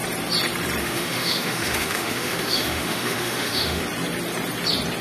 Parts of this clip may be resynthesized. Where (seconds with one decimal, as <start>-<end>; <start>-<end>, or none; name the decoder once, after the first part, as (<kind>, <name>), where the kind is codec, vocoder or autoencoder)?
0.8-3.8 (autoencoder, DAC-VAE)